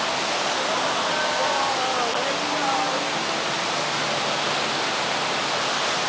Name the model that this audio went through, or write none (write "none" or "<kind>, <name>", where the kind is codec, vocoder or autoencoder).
none